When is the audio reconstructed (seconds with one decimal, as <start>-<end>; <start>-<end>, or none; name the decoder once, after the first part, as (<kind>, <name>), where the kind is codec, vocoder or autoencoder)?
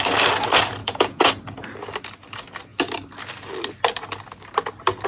0.8-1.3 (vocoder, Vocos)